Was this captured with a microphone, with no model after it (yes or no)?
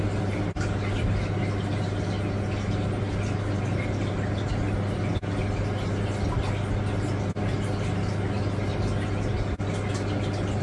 yes